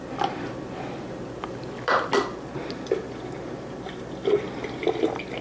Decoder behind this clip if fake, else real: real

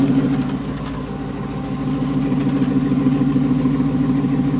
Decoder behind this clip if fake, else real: real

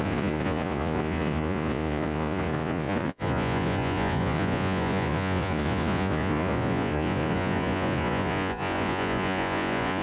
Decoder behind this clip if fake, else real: fake, vocoder, Vocos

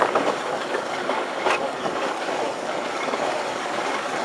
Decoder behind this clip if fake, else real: fake, codec, DAC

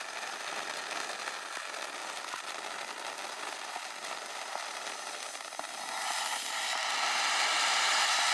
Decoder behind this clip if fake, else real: real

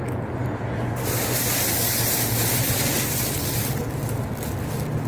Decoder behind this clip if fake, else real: real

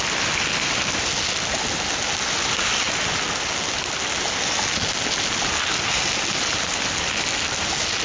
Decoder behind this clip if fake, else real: real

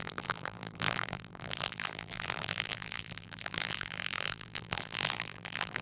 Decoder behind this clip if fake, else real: fake, vocoder, BigVGAN v2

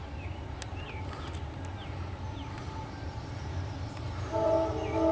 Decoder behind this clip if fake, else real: fake, vocoder, BigVGAN v2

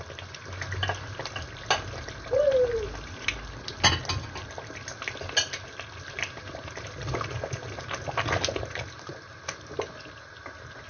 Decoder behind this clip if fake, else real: real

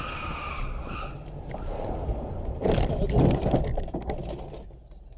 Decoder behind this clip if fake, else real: real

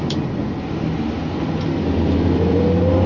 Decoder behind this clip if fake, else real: real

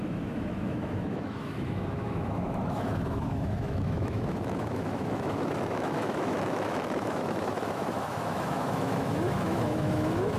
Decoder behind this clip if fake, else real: fake, autoencoder, DAC-VAE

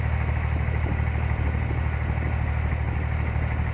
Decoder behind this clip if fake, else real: real